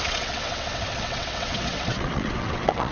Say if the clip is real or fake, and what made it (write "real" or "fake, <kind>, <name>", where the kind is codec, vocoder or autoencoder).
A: fake, vocoder, WaveNeXt